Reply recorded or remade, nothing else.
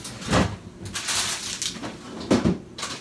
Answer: recorded